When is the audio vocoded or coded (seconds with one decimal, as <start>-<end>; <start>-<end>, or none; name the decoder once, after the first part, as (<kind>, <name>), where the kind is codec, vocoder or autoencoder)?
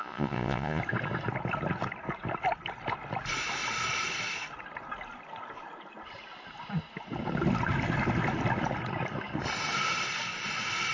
0.0-0.8 (vocoder, Vocos)